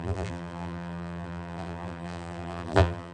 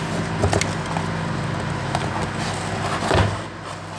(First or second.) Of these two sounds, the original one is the second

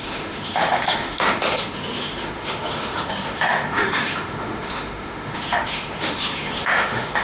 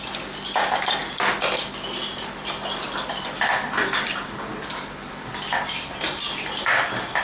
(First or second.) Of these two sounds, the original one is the second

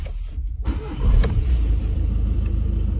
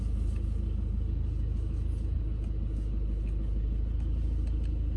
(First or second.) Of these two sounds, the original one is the second